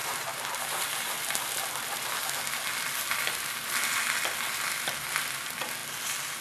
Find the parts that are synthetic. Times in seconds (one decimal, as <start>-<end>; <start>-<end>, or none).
0.0-1.7